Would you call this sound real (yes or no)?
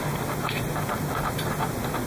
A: yes